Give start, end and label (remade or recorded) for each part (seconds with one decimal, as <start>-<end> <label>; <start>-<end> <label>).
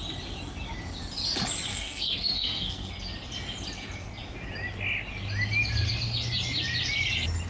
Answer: 0.0-1.7 recorded; 1.7-2.9 remade; 2.9-7.5 recorded